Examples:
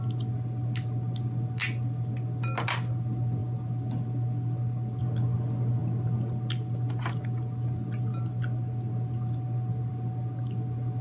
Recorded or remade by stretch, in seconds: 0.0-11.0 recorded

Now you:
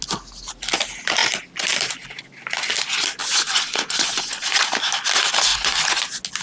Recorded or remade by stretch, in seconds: 0.0-3.2 recorded; 3.2-4.7 remade; 4.7-5.5 recorded; 5.5-6.0 remade; 6.0-6.4 recorded

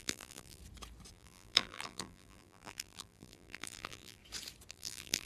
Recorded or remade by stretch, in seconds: 0.0-0.6 remade; 0.6-1.1 recorded; 1.1-4.2 remade; 4.2-4.7 recorded; 4.7-5.3 remade

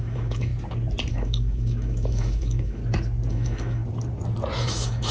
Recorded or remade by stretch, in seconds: 0.0-0.5 remade; 0.5-1.1 recorded; 1.1-2.8 remade; 2.8-3.3 recorded; 3.3-3.8 remade; 3.8-4.6 recorded; 4.6-5.1 remade

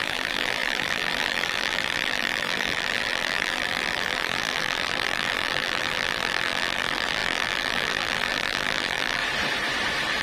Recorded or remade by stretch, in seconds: 0.0-9.2 remade; 9.2-10.2 recorded

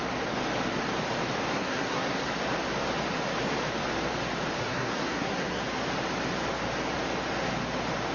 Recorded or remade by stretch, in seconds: 0.0-1.5 recorded; 1.5-2.3 remade; 2.3-4.6 recorded; 4.6-5.6 remade; 5.6-8.1 recorded

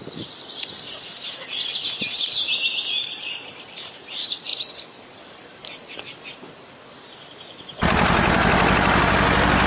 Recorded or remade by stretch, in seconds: 0.0-4.5 recorded; 4.5-6.6 remade; 6.6-9.7 recorded